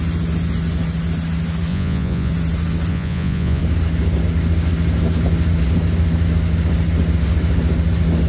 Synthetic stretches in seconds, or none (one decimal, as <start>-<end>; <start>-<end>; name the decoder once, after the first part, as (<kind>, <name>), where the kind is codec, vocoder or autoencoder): 1.7-2.3 (vocoder, Vocos); 2.9-3.6

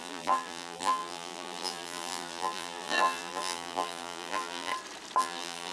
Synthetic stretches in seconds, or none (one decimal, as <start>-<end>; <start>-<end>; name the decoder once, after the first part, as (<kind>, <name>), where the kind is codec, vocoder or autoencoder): 0.0-4.7 (vocoder, BigVGAN v2); 5.2-5.7

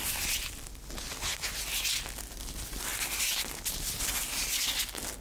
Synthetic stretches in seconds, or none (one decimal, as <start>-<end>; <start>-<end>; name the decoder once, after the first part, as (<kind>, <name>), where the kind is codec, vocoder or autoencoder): none

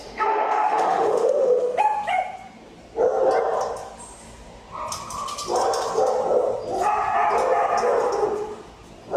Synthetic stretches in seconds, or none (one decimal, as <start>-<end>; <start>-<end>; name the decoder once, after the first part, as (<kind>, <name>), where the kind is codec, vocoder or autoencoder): 0.0-1.8 (autoencoder, DAC-VAE)